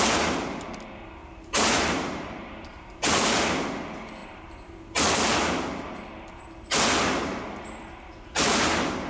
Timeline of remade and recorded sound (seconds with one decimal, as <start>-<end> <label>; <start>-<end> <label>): 0.0-1.2 recorded; 1.2-3.2 remade; 3.2-4.2 recorded; 4.2-4.8 remade; 4.8-9.1 recorded